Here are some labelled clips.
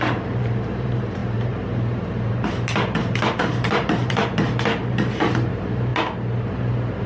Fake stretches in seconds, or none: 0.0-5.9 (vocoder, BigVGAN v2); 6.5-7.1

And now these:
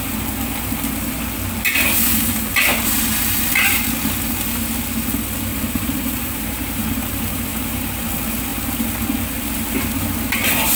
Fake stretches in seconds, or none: 5.5-6.8 (vocoder, BigVGAN v2); 7.5-8.0

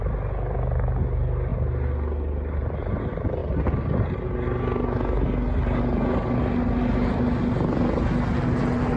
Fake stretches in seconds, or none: none

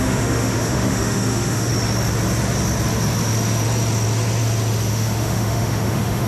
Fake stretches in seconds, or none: 0.0-1.7 (autoencoder, DAC-VAE); 4.9-6.3

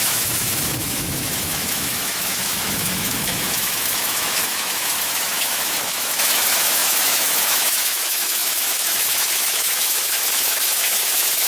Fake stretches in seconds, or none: 0.0-11.5 (autoencoder, DAC-VAE)

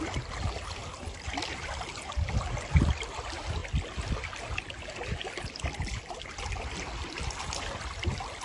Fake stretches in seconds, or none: none

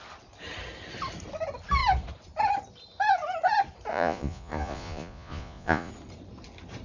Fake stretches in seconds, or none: 3.9-5.9 (vocoder, Vocos)